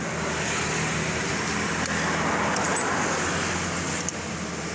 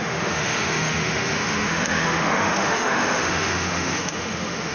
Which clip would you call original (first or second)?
first